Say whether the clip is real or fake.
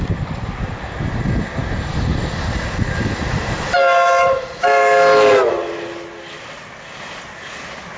real